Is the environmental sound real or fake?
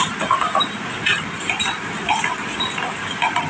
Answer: real